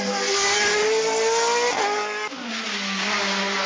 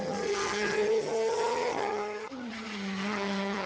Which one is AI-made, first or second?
second